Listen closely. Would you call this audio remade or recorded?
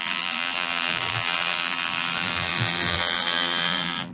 remade